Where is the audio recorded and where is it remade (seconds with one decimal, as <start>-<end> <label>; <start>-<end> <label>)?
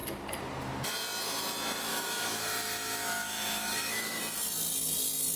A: 0.0-1.9 recorded; 1.9-4.2 remade; 4.2-5.4 recorded